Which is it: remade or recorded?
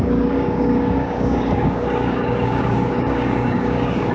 remade